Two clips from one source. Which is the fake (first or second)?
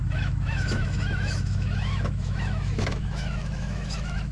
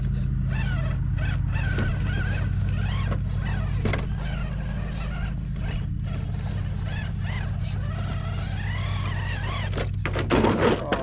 first